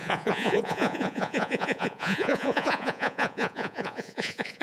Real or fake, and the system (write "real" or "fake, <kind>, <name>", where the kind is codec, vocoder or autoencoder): fake, vocoder, Vocos